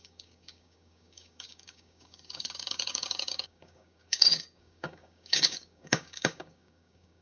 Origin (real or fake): fake